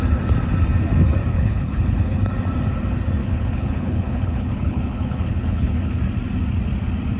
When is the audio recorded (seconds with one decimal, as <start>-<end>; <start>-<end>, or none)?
0.0-1.3; 2.2-3.2; 6.0-7.2